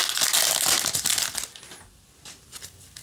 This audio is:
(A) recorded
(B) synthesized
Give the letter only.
A